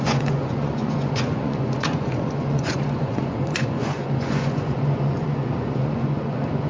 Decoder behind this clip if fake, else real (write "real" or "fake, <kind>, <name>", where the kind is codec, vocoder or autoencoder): fake, vocoder, Vocos